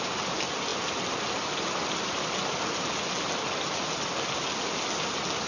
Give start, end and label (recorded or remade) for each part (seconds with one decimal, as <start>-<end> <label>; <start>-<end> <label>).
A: 0.0-5.5 recorded